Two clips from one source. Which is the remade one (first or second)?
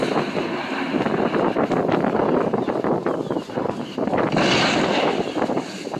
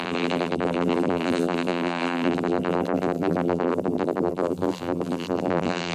second